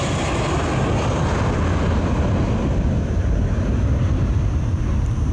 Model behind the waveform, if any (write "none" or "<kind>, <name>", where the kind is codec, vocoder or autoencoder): none